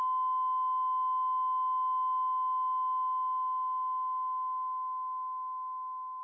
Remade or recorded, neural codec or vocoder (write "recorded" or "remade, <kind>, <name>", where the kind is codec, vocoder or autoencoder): recorded